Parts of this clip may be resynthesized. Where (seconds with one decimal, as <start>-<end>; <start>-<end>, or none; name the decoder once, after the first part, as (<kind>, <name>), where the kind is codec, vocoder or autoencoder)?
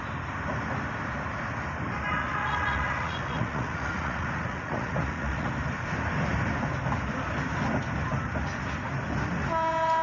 2.1-5.5 (vocoder, Vocos)